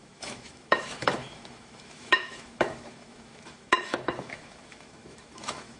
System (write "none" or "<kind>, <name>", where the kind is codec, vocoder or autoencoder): autoencoder, DAC-VAE